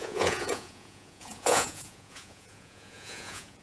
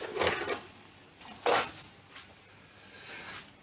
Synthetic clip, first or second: first